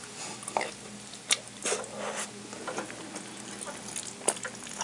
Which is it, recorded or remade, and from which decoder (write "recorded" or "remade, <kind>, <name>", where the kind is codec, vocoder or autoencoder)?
recorded